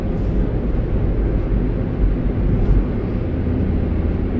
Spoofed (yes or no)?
no